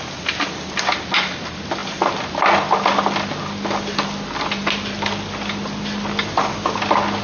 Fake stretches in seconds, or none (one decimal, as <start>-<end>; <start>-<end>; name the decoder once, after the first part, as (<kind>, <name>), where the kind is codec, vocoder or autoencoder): none